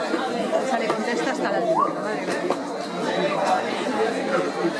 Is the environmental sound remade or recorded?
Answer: recorded